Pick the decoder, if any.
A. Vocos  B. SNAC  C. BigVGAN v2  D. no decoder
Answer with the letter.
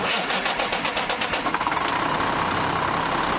D